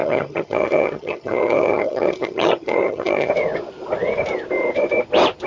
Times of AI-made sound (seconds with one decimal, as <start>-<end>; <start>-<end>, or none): 0.0-3.3

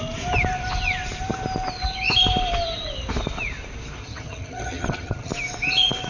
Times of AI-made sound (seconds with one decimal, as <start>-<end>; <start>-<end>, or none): 4.0-5.3

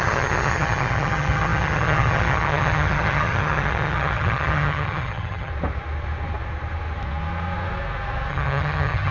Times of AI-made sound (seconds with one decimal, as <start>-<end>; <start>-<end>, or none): 0.0-5.5; 8.3-9.1

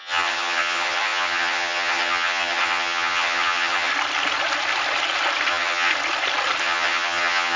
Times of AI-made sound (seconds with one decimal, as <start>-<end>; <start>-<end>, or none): 0.0-3.9; 5.5-5.9; 6.6-7.6

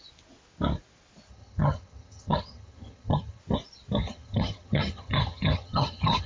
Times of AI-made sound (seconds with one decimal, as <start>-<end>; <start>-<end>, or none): 1.3-3.4; 4.0-6.3

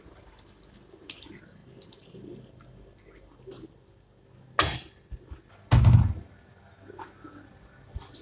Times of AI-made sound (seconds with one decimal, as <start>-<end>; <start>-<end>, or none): none

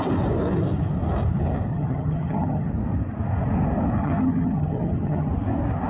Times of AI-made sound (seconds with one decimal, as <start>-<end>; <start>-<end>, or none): 1.7-2.7; 4.0-5.3

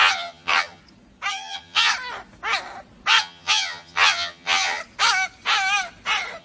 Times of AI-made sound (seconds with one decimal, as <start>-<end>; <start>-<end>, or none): 0.0-0.8; 1.3-1.9; 3.2-4.8